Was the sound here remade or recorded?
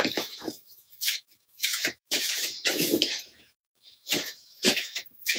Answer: remade